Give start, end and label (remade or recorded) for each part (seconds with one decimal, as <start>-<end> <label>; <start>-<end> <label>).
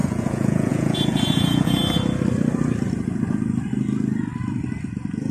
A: 0.0-1.8 remade; 1.8-5.3 recorded